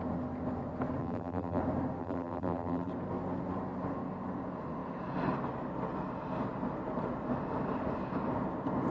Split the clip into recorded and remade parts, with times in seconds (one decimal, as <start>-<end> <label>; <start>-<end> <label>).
0.0-1.0 recorded; 1.0-1.6 remade; 1.6-2.0 recorded; 2.0-2.9 remade; 2.9-8.9 recorded